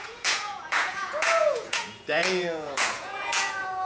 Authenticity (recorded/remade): remade